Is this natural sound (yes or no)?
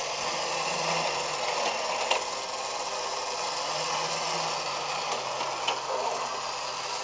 yes